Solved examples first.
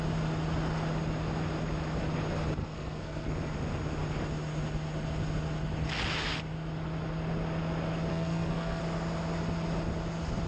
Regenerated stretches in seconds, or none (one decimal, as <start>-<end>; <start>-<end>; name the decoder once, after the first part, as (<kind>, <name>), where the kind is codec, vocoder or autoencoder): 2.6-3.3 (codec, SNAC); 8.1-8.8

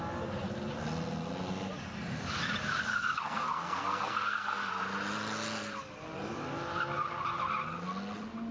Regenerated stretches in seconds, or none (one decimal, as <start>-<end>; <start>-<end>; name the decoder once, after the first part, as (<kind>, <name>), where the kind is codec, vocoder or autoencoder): 2.9-4.7 (codec, SNAC)

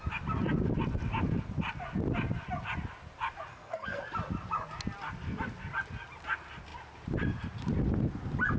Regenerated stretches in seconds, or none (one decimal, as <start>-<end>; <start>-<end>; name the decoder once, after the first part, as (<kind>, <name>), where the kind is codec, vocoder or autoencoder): 3.5-4.0 (codec, SNAC)